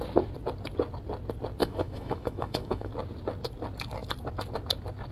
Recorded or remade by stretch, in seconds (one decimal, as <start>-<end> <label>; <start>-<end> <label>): 0.0-1.6 recorded; 1.6-2.9 remade; 2.9-5.1 recorded